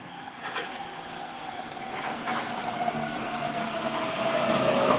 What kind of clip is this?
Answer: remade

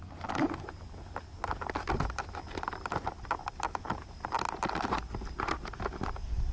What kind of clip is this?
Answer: recorded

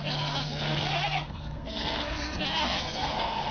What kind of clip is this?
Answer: remade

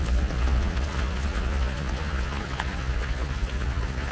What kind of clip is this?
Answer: remade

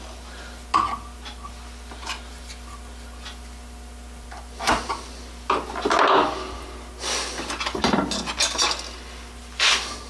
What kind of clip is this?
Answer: recorded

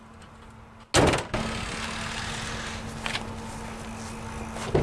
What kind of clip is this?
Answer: recorded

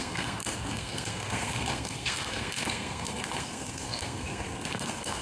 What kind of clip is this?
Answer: remade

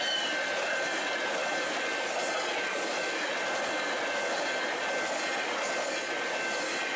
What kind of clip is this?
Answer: recorded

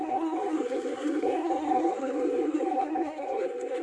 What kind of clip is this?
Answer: remade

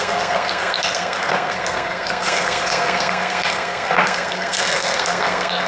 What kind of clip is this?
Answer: remade